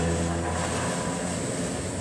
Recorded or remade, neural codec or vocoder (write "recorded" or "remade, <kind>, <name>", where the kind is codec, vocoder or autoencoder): recorded